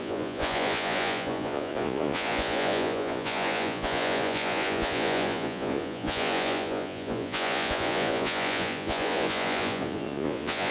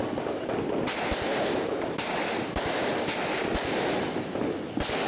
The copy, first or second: first